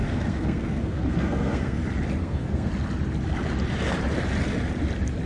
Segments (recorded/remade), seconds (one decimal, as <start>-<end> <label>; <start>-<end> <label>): 0.0-1.8 remade; 1.8-2.2 recorded; 2.2-2.7 remade; 2.7-5.3 recorded